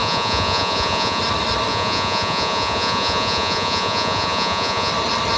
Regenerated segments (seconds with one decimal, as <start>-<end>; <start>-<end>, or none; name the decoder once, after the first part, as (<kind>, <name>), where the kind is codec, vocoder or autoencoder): 0.0-1.2 (vocoder, Vocos); 1.7-4.9